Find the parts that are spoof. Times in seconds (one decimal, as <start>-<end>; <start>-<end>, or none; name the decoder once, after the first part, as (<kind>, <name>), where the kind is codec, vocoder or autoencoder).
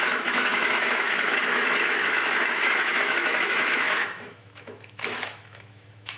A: 0.0-6.2 (autoencoder, DAC-VAE)